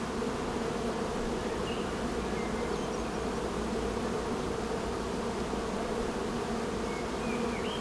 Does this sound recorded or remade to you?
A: recorded